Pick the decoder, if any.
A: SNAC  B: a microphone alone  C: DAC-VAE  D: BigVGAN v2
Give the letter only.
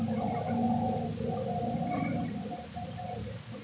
B